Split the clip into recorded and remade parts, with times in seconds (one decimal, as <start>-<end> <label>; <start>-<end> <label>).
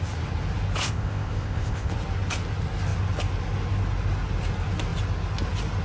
0.0-0.8 recorded; 0.8-1.9 remade; 1.9-5.8 recorded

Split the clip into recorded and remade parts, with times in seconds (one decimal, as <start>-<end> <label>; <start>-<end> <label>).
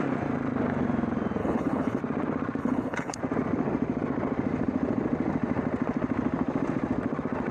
0.0-1.4 recorded; 1.4-2.0 remade; 2.0-2.6 recorded; 2.6-3.2 remade; 3.2-7.5 recorded